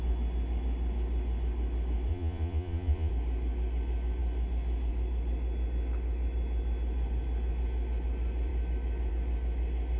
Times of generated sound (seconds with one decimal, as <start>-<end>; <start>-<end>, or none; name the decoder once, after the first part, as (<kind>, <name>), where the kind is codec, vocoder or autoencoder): 2.1-3.1 (vocoder, Vocos)